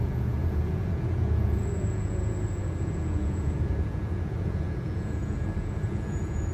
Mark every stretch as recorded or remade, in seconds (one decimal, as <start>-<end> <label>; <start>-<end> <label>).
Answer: 0.0-6.5 remade